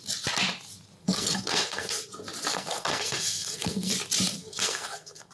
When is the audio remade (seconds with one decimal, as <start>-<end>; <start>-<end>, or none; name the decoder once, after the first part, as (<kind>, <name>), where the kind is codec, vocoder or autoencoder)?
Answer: 1.0-1.9 (codec, SNAC); 2.5-3.9; 4.3-5.3